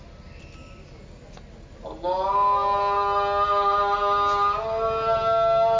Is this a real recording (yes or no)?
yes